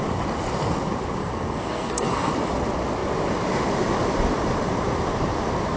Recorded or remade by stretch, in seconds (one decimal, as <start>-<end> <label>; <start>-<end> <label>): 0.0-1.2 recorded; 1.2-2.3 remade; 2.3-5.8 recorded

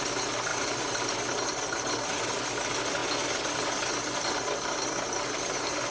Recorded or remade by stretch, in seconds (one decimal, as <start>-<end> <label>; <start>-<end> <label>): 0.0-0.5 recorded; 0.5-1.3 remade; 1.3-5.9 recorded

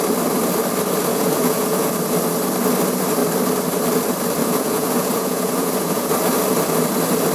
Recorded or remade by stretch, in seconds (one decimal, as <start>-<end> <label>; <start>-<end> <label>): 0.0-1.1 recorded; 1.1-1.9 remade; 1.9-4.4 recorded; 4.4-6.1 remade; 6.1-7.3 recorded

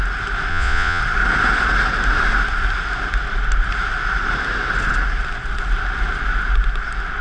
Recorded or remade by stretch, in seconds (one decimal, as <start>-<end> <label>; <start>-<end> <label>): 0.0-0.5 recorded; 0.5-1.0 remade; 1.0-7.2 recorded

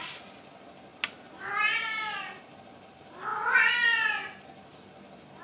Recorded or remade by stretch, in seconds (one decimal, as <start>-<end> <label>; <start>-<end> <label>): 0.0-5.4 recorded

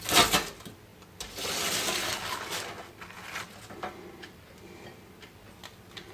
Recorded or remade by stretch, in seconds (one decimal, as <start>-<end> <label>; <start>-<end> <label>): 0.0-6.1 recorded

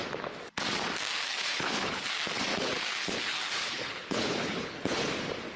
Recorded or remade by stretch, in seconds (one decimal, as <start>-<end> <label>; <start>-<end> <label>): 0.0-1.3 recorded; 1.3-2.1 remade; 2.1-2.5 recorded; 2.5-5.1 remade; 5.1-5.6 recorded

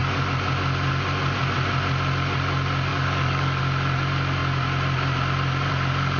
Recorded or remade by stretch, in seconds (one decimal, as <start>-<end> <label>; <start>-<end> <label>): 0.0-2.9 recorded; 2.9-3.6 remade; 3.6-6.2 recorded